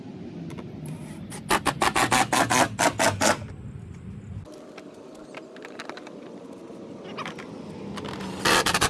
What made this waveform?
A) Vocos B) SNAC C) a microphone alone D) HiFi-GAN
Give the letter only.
C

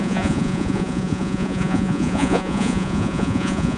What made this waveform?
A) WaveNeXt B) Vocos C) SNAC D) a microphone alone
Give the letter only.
B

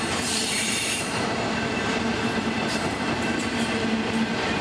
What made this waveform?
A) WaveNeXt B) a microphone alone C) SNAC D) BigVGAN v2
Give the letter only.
D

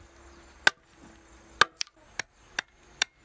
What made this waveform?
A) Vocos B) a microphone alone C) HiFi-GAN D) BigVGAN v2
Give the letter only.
B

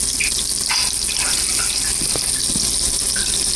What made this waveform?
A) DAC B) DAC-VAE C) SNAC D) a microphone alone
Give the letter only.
D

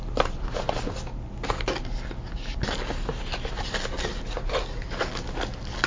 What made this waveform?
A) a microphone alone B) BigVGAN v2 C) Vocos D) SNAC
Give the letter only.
A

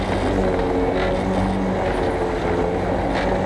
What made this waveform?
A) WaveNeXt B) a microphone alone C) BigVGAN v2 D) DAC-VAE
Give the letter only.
B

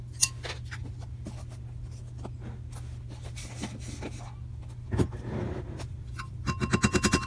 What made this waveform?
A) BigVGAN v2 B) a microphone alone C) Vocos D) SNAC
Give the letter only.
B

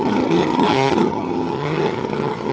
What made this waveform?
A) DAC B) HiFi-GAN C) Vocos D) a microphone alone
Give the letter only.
B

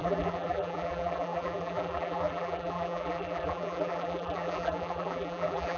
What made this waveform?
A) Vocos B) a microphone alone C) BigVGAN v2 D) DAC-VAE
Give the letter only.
C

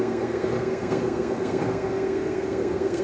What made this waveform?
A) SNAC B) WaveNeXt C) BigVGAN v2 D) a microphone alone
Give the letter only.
A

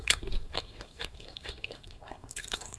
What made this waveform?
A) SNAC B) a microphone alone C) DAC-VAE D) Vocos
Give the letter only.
A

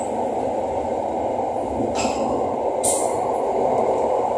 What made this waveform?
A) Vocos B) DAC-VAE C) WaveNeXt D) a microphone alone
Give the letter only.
D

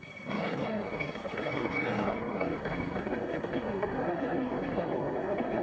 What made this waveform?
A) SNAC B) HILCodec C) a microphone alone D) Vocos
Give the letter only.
A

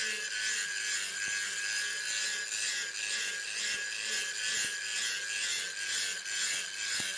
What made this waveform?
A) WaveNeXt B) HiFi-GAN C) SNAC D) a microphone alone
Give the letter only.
D